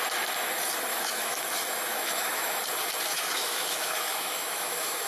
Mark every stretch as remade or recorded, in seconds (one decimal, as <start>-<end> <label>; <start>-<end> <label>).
0.0-0.9 recorded; 0.9-1.4 remade; 1.4-1.9 recorded; 1.9-2.6 remade; 2.6-3.1 recorded; 3.1-5.1 remade